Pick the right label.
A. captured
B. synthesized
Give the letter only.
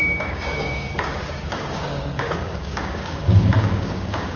B